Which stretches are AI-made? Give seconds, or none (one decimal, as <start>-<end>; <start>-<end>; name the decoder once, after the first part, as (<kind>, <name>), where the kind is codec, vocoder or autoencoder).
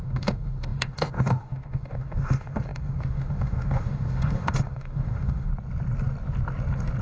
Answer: 0.0-5.5 (autoencoder, DAC-VAE)